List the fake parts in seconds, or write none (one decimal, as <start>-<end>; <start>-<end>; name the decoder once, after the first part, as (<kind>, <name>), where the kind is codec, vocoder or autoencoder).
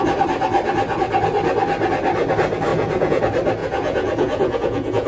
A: 2.7-3.2 (vocoder, Vocos); 3.6-5.1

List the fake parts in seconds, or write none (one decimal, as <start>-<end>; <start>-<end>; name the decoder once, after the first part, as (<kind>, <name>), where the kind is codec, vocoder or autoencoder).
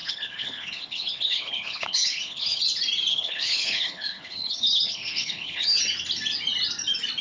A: 0.0-2.6 (codec, HILCodec); 3.1-5.8